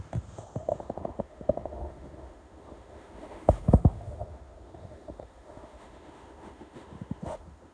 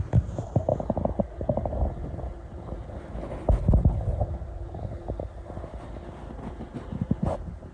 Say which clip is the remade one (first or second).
first